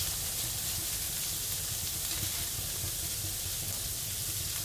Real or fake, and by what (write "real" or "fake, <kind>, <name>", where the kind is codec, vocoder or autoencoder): real